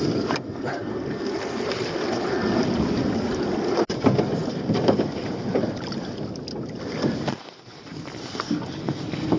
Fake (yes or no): no